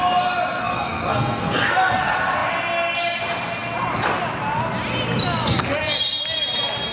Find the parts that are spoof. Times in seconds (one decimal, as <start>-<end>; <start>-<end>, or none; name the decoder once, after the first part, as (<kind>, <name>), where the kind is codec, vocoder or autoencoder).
0.6-2.0 (codec, SNAC)